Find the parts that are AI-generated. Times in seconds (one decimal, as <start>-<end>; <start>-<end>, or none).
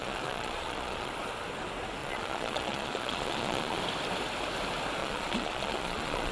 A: 0.0-1.1; 2.0-3.8; 5.0-6.3